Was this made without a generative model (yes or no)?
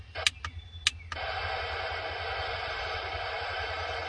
yes